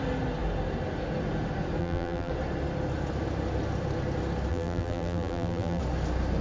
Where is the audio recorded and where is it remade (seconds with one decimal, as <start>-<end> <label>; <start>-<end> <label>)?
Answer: 0.0-1.8 recorded; 1.8-2.3 remade; 2.3-4.5 recorded; 4.5-5.8 remade; 5.8-6.4 recorded